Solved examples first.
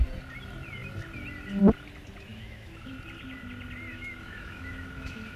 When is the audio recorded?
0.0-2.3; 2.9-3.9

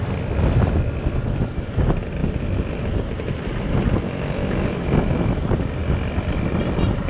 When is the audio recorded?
0.0-7.1

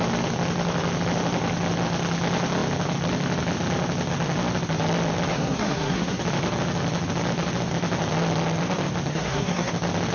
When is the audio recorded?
0.0-5.3; 6.2-9.1; 9.7-10.1

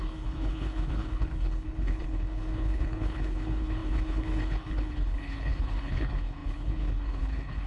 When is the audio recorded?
none

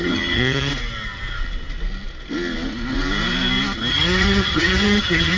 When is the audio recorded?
0.7-3.9

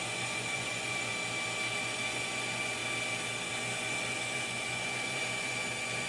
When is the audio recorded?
1.1-1.8; 2.8-3.5

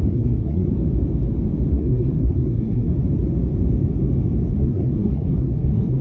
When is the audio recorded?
0.7-1.7; 2.9-4.5

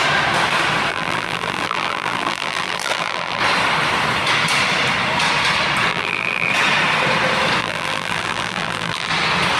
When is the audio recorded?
0.0-0.9; 3.4-5.9; 6.5-7.6; 9.1-9.6